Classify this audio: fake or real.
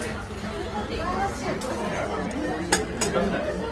real